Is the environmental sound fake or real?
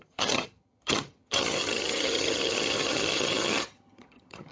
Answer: fake